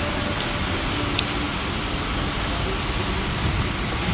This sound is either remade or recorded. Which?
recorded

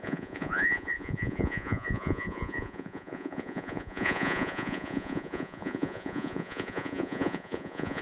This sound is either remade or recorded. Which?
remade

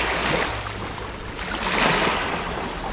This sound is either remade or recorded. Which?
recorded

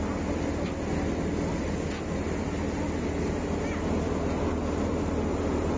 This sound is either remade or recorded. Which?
recorded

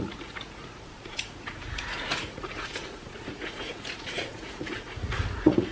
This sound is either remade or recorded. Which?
remade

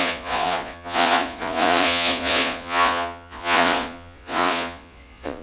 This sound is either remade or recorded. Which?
remade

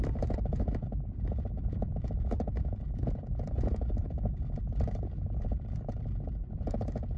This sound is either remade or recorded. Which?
remade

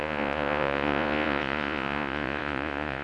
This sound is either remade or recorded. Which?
remade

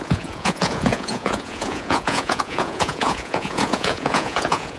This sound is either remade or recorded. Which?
remade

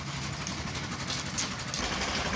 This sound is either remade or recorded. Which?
recorded